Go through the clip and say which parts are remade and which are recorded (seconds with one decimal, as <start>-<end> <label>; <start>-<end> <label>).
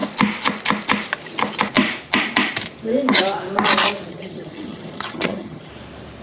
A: 0.0-4.1 recorded; 4.1-5.7 remade; 5.7-6.2 recorded